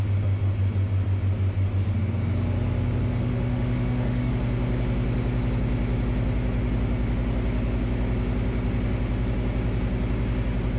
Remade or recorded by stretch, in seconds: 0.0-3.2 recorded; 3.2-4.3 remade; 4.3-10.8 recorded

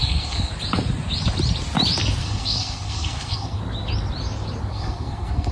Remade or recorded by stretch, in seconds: 0.0-0.5 remade; 0.5-2.2 recorded; 2.2-3.6 remade; 3.6-4.7 recorded; 4.7-5.5 remade

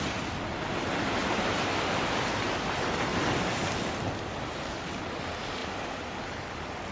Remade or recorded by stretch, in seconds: 0.0-1.2 recorded; 1.2-3.5 remade; 3.5-6.9 recorded

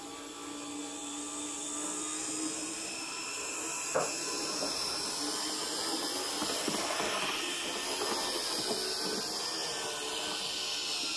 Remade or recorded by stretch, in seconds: 0.0-2.6 recorded; 2.6-5.1 remade; 5.1-11.2 recorded

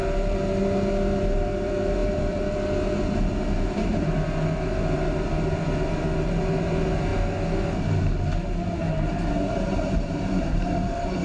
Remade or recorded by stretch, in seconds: 0.0-7.1 remade; 7.1-9.5 recorded; 9.5-11.2 remade

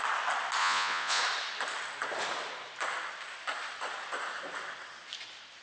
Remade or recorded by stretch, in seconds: 0.0-0.6 recorded; 0.6-1.2 remade; 1.2-5.6 recorded

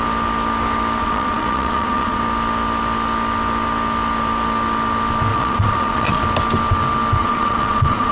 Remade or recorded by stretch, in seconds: 0.0-1.0 recorded; 1.0-2.2 remade; 2.2-5.3 recorded; 5.3-6.2 remade; 6.2-7.2 recorded; 7.2-8.1 remade

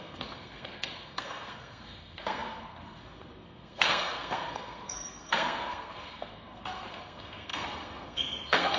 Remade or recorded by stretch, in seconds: 0.0-8.8 remade